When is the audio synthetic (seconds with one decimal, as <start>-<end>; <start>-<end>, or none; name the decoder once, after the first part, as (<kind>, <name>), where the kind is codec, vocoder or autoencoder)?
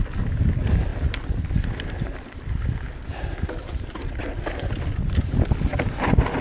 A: none